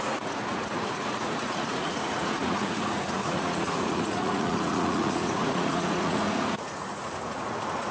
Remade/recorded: remade